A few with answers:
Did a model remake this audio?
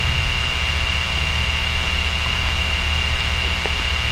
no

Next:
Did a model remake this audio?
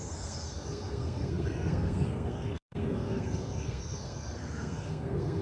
yes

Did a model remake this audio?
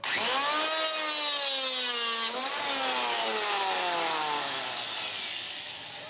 no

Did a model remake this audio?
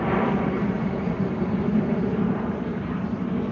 yes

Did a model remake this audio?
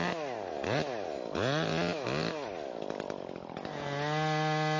no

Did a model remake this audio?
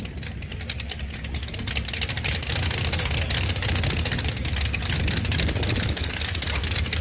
no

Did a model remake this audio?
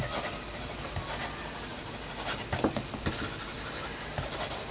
no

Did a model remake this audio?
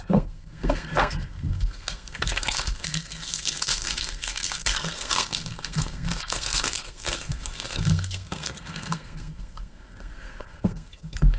yes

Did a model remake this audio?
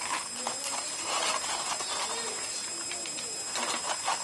no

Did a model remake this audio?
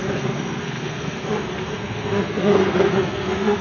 yes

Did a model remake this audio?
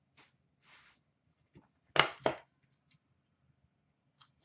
no